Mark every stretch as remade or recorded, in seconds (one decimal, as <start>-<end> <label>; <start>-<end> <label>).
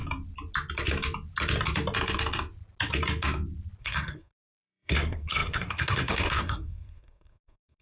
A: 0.0-3.8 recorded; 3.8-7.8 remade